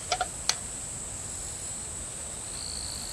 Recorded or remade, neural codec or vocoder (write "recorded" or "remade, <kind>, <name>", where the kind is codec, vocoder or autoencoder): recorded